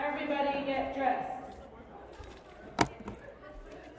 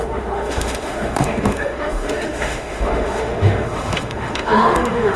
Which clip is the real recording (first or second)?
first